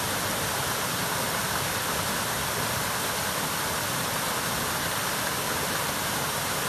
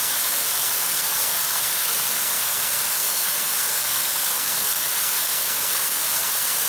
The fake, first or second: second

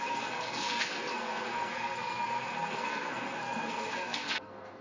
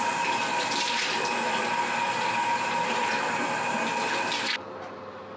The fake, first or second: first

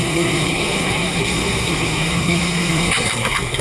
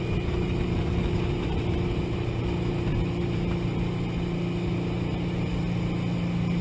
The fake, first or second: first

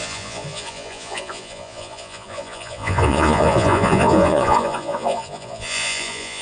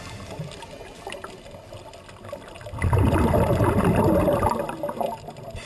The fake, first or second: first